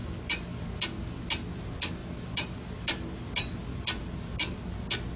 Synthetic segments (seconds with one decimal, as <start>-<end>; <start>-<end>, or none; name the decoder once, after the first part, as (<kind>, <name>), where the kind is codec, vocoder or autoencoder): none